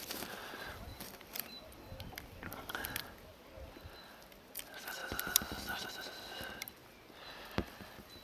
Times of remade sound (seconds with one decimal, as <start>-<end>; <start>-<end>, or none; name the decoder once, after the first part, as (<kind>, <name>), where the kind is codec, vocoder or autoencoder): 0.9-3.0 (vocoder, BigVGAN v2); 5.0-5.8